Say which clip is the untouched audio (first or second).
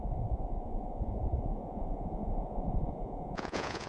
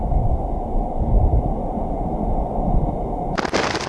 second